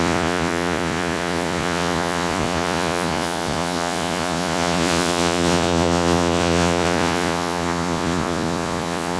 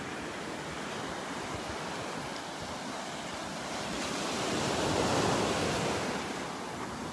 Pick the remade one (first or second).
first